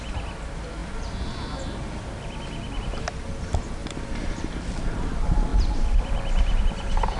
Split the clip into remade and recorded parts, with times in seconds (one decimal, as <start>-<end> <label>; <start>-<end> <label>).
0.0-3.8 recorded; 3.8-4.4 remade; 4.4-7.2 recorded